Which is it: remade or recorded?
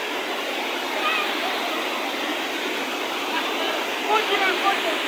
recorded